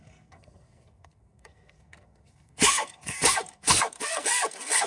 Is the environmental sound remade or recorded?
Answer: remade